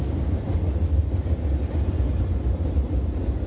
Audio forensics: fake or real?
real